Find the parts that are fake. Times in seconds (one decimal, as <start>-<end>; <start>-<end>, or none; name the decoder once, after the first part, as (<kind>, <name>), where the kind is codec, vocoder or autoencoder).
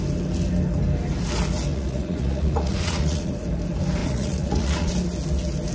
1.7-3.3 (vocoder, Vocos); 4.0-4.9